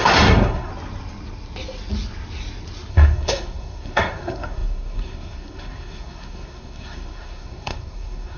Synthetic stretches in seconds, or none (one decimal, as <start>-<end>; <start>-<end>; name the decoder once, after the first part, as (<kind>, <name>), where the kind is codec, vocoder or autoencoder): 0.0-0.7 (codec, SNAC); 2.9-8.4